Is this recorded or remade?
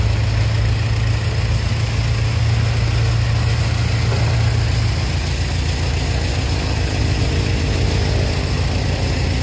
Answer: recorded